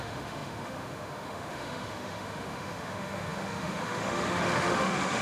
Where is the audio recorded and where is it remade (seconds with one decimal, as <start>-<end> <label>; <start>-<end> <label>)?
0.0-5.2 remade

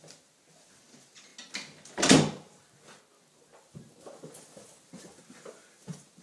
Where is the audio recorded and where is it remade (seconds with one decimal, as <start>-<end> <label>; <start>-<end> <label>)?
0.0-6.2 recorded

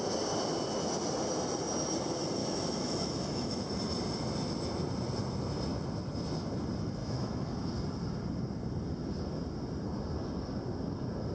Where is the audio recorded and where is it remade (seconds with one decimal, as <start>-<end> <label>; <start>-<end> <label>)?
0.0-2.4 recorded; 2.4-3.7 remade; 3.7-7.0 recorded; 7.0-7.7 remade; 7.7-11.3 recorded

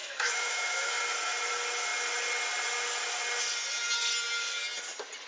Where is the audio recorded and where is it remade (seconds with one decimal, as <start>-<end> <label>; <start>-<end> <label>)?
0.0-1.0 remade; 1.0-5.3 recorded

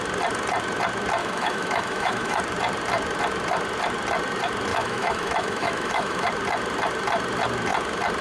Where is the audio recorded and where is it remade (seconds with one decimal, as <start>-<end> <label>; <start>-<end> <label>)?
0.0-1.2 recorded; 1.2-2.4 remade; 2.4-4.7 recorded; 4.7-6.3 remade; 6.3-8.2 recorded